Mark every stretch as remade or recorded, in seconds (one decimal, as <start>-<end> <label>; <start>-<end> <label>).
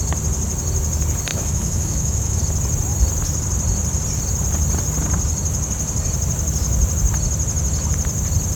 0.0-1.3 recorded; 1.3-2.4 remade; 2.4-8.6 recorded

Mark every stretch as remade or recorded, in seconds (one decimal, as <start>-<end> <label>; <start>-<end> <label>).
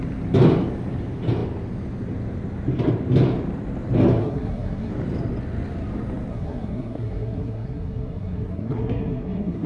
0.0-4.2 recorded; 4.2-4.9 remade; 4.9-6.3 recorded; 6.3-9.7 remade